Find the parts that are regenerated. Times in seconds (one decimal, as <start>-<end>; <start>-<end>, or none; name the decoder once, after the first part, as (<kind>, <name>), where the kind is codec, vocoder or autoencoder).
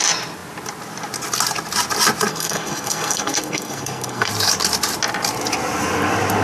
2.3-4.3 (codec, SNAC)